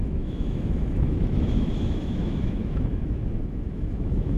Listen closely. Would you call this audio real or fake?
fake